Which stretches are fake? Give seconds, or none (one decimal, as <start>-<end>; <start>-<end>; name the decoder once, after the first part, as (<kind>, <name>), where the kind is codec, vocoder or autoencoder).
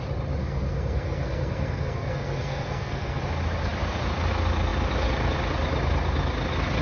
0.4-3.2 (codec, SNAC)